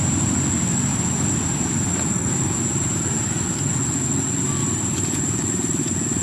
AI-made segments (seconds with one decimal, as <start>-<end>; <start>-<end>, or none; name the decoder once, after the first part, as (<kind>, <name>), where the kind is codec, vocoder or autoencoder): 0.9-4.1 (vocoder, BigVGAN v2); 4.6-5.8